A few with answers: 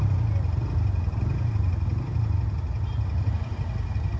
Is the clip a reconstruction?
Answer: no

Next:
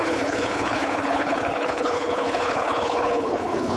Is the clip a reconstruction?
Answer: yes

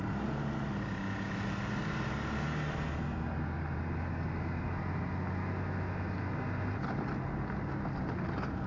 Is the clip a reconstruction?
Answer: no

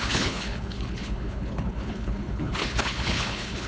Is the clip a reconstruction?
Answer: yes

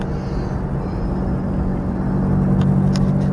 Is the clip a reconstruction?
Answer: no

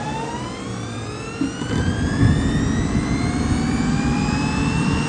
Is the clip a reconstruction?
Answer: no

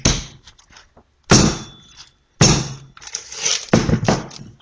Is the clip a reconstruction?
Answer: no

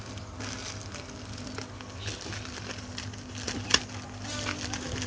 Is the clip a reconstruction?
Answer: no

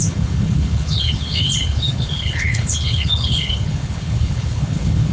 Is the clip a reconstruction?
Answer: yes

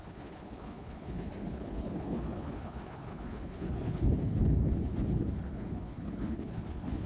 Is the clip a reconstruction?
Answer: yes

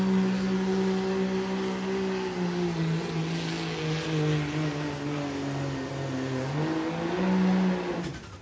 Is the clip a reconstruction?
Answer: no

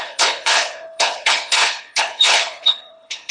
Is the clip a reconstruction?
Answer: yes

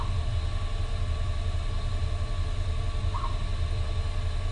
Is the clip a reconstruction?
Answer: no